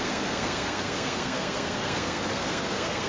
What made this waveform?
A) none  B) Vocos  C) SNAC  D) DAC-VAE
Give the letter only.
C